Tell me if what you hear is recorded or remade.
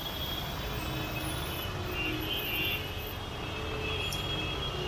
recorded